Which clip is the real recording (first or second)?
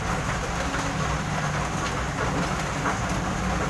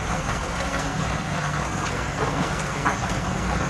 first